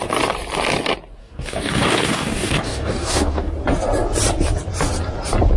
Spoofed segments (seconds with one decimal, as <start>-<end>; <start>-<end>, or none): 1.2-3.5